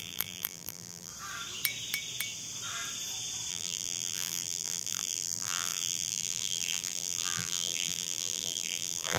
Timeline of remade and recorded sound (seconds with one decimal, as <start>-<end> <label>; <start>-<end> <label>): 0.0-1.1 remade; 1.1-3.5 recorded; 3.5-9.2 remade